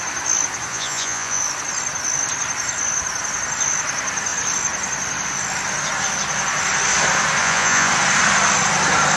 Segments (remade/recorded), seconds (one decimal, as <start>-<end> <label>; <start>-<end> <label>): 0.0-0.7 recorded; 0.7-1.4 remade; 1.4-7.4 recorded; 7.4-7.9 remade; 7.9-9.2 recorded